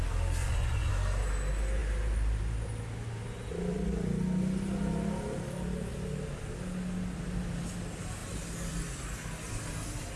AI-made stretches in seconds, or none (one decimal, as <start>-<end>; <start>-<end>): 0.4-0.9